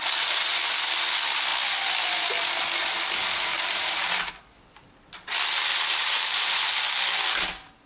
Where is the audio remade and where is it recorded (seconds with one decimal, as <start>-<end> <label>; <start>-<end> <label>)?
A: 0.0-3.5 recorded; 3.5-4.3 remade; 4.3-6.0 recorded; 6.0-6.8 remade; 6.8-7.9 recorded